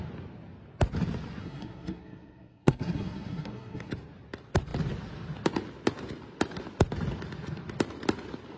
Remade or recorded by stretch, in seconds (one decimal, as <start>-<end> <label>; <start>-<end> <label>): 0.0-1.4 recorded; 1.4-3.9 remade; 3.9-8.6 recorded

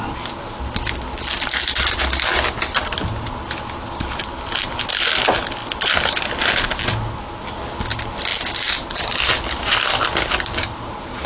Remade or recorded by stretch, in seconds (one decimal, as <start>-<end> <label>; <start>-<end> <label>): 0.0-11.3 recorded

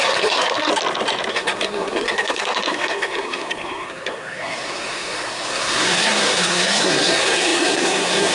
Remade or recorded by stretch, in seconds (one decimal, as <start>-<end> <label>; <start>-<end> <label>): 0.0-0.7 remade; 0.7-1.3 recorded; 1.3-8.3 remade

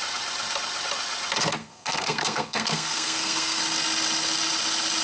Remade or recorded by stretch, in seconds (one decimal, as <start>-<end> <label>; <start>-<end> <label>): 0.0-1.6 recorded; 1.6-3.6 remade; 3.6-5.0 recorded

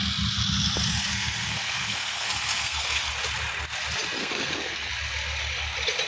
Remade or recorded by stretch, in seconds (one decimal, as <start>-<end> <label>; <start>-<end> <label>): 0.0-1.1 recorded; 1.1-3.1 remade; 3.1-4.2 recorded; 4.2-4.9 remade; 4.9-6.1 recorded

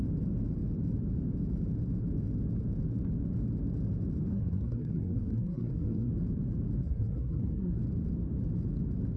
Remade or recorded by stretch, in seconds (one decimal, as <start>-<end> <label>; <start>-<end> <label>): 0.0-4.3 recorded; 4.3-6.1 remade; 6.1-6.8 recorded; 6.8-7.8 remade; 7.8-9.2 recorded

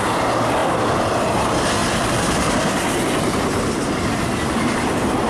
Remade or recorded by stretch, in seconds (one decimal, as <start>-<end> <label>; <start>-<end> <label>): 0.0-5.3 recorded

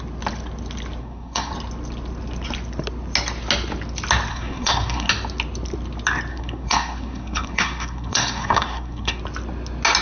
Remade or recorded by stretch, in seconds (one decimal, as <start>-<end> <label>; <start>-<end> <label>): 0.0-1.0 recorded; 1.0-1.5 remade; 1.5-4.3 recorded; 4.3-5.1 remade; 5.1-6.3 recorded; 6.3-9.2 remade; 9.2-10.0 recorded